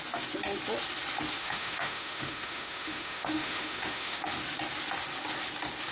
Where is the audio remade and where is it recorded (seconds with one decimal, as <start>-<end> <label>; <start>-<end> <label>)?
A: 0.0-1.4 recorded; 1.4-4.2 remade; 4.2-5.9 recorded